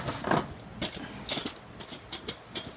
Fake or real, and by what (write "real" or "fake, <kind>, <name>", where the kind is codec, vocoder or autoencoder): real